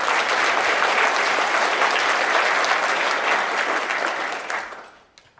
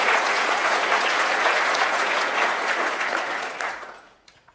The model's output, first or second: second